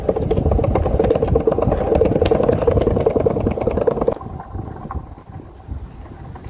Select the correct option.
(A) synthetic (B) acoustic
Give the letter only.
B